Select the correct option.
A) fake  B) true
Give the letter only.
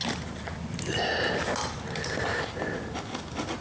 B